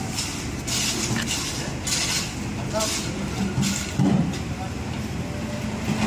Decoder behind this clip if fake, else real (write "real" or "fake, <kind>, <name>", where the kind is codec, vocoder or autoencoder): real